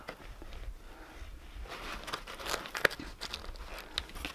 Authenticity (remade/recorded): recorded